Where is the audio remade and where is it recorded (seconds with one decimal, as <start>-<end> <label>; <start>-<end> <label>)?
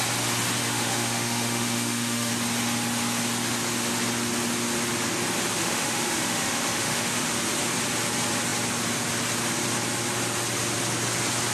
0.0-0.6 recorded; 0.6-2.3 remade; 2.3-5.6 recorded; 5.6-7.3 remade; 7.3-11.5 recorded